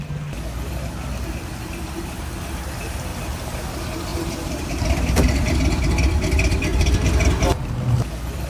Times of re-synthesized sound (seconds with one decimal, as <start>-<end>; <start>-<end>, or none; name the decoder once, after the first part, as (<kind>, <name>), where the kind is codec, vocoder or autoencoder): 3.1-3.6 (vocoder, BigVGAN v2); 4.1-5.6; 6.7-7.3